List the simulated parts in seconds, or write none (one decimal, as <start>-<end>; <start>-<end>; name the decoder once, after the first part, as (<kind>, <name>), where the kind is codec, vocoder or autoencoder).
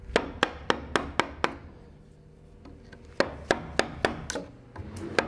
none